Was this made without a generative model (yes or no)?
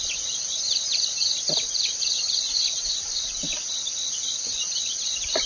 yes